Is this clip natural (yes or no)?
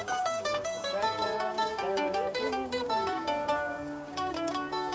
no